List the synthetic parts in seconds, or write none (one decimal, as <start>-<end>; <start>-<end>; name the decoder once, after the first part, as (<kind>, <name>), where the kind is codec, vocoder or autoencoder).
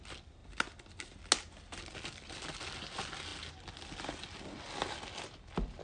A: none